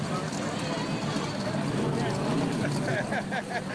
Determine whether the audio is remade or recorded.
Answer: recorded